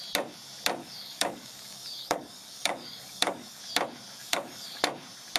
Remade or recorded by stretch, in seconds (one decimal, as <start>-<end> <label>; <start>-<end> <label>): 0.0-0.8 recorded; 0.8-3.6 remade; 3.6-4.2 recorded; 4.2-4.8 remade; 4.8-5.4 recorded